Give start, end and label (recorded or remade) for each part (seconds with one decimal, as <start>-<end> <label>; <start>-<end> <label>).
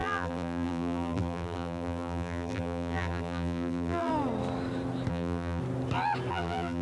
0.0-4.1 remade; 4.1-5.1 recorded; 5.1-5.6 remade; 5.6-6.3 recorded; 6.3-6.8 remade